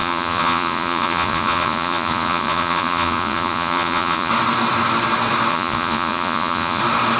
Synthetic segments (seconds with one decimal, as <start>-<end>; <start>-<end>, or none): 0.0-4.3; 5.5-6.8

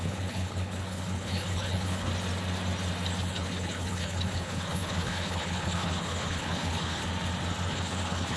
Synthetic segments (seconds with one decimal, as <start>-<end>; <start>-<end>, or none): 0.0-2.1; 3.2-7.0; 7.7-8.4